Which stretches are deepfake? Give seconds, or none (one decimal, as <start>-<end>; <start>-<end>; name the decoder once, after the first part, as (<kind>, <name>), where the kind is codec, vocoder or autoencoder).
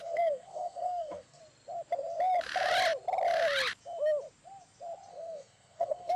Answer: 0.0-1.4 (codec, SNAC); 5.1-6.2